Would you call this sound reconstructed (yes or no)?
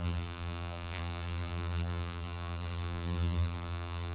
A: yes